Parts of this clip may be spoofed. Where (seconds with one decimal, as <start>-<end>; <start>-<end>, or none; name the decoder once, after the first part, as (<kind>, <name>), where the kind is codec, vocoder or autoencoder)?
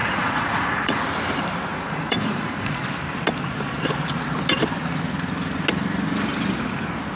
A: 0.0-1.0 (vocoder, Vocos); 1.7-2.8